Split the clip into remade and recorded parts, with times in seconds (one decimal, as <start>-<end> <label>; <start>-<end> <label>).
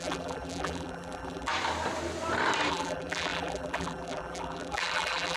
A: 0.0-1.5 remade; 1.5-2.7 recorded; 2.7-5.4 remade